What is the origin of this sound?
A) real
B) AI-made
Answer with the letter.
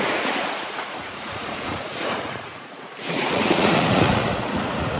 B